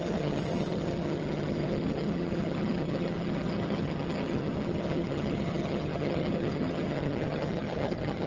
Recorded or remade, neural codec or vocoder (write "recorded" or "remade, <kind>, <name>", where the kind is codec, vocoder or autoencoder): remade, vocoder, HiFi-GAN